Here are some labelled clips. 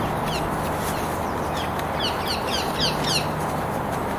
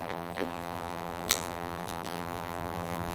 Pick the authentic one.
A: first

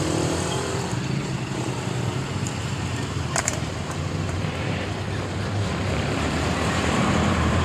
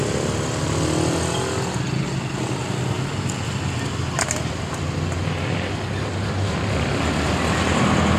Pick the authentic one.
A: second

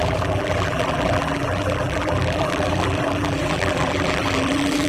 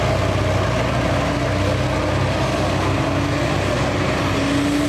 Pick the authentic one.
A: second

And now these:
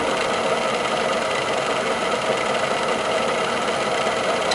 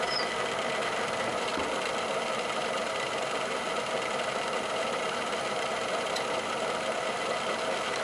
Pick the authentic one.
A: first